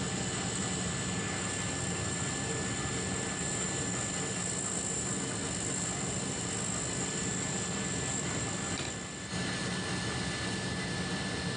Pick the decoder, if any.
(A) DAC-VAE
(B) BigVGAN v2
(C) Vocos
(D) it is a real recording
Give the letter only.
D